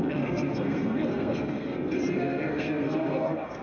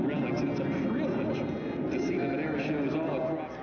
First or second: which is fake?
first